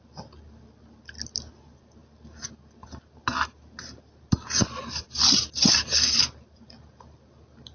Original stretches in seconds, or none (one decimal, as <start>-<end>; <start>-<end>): 0.0-7.7